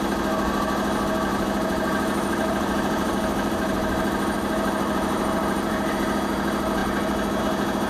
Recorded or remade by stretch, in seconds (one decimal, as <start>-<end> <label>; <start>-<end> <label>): 0.0-1.3 recorded; 1.3-5.9 remade; 5.9-7.9 recorded